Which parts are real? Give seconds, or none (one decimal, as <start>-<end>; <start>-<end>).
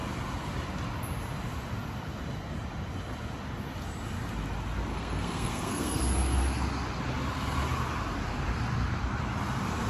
0.0-4.9; 6.0-9.9